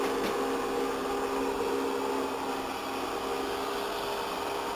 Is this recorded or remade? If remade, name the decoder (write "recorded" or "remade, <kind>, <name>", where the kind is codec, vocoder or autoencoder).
recorded